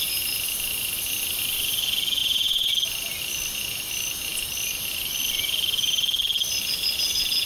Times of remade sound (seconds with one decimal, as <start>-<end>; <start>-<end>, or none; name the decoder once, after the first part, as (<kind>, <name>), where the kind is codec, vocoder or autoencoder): 2.2-2.7 (vocoder, Vocos)